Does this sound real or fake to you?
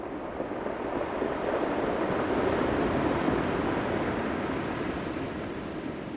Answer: fake